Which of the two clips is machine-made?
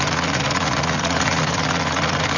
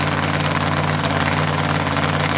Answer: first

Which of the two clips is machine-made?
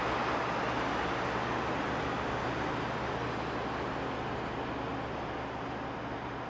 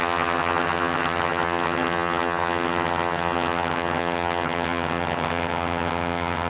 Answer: second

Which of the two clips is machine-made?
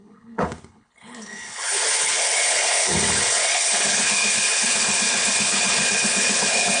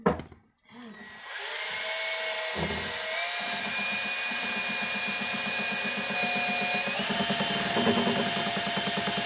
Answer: first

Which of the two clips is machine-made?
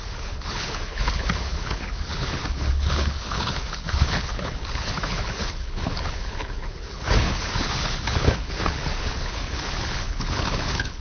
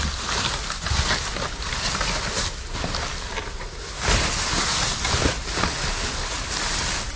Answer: first